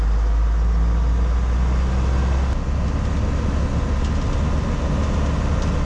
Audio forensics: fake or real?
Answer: real